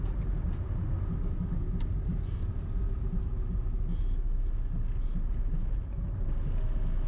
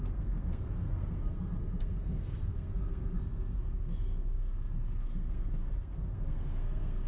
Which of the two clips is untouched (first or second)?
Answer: first